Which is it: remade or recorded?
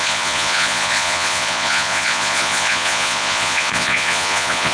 remade